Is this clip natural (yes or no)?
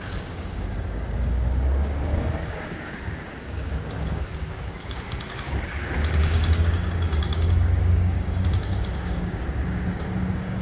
no